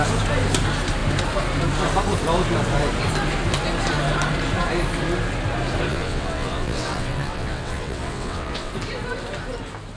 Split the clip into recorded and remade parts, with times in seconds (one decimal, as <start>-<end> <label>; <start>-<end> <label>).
0.0-5.9 recorded; 5.9-8.7 remade; 8.7-10.0 recorded